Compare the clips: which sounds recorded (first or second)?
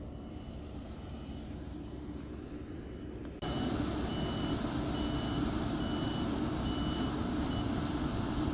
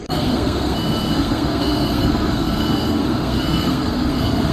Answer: first